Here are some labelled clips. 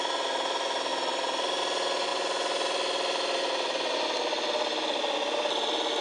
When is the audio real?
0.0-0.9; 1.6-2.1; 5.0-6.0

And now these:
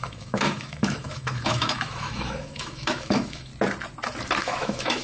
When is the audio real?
3.5-4.4